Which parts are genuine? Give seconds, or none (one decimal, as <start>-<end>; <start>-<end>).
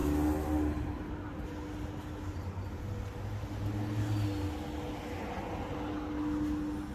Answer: 0.0-6.9